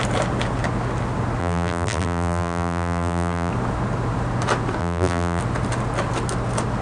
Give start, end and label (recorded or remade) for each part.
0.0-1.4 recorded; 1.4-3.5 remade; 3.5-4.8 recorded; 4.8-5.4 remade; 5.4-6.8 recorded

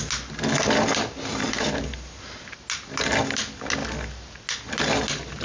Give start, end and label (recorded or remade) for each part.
0.0-1.3 recorded; 1.3-1.9 remade; 1.9-5.4 recorded

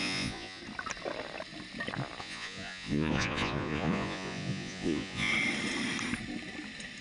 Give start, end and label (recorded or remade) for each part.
0.0-0.6 remade; 0.6-2.2 recorded; 2.2-5.3 remade; 5.3-7.0 recorded